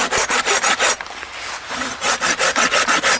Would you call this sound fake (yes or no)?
no